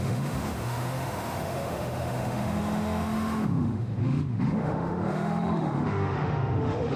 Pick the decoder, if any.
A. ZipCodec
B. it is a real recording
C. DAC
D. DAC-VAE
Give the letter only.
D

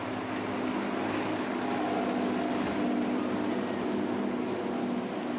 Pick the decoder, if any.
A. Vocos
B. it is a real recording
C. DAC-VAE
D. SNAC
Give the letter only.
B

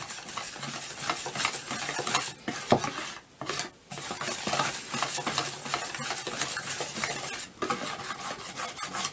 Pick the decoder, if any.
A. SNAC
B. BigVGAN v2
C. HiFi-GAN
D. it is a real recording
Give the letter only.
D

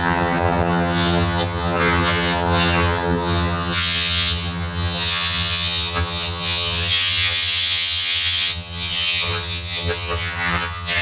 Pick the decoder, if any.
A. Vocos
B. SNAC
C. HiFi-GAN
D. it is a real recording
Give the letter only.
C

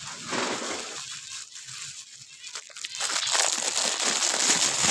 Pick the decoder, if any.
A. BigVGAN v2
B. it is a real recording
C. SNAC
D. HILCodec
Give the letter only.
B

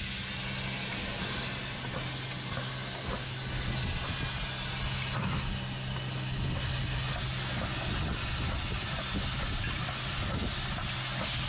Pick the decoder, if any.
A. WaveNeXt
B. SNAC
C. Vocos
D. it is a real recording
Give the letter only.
D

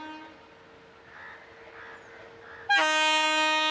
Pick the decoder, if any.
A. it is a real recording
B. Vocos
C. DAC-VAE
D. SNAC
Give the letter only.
A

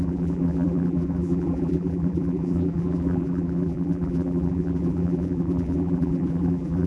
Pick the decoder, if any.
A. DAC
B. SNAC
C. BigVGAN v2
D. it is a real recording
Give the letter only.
C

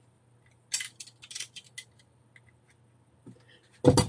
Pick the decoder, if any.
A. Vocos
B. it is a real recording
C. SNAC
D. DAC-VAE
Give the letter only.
B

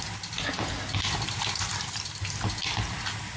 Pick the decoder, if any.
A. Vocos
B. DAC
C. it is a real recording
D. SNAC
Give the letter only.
C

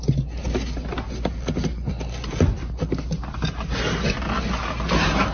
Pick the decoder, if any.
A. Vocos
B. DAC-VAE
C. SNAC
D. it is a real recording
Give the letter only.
D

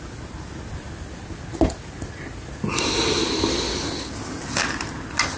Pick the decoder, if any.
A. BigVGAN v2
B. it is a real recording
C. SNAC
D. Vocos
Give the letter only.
B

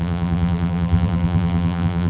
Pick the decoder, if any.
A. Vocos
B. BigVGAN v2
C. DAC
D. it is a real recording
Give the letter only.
B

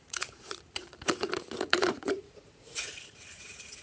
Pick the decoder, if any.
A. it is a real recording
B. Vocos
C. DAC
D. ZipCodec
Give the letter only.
B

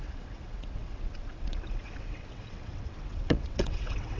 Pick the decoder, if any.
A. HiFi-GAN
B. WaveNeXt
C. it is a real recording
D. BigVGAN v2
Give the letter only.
B